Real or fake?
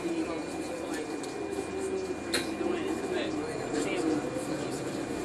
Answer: real